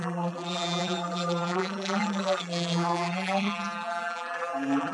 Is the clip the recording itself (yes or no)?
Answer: no